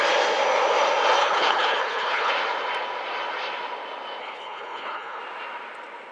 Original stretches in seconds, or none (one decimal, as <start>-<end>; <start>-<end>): 0.0-1.2; 2.3-4.2; 5.2-6.1